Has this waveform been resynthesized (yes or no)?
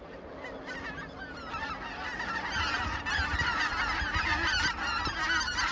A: no